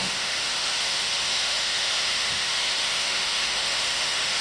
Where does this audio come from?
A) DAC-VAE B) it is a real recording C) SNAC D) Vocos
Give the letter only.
A